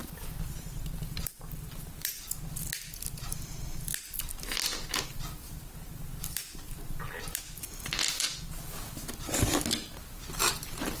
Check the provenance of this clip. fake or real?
real